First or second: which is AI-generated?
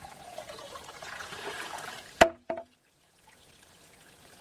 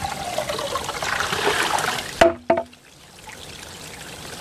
first